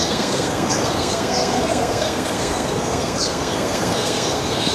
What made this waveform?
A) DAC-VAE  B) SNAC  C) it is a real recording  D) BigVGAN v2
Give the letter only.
B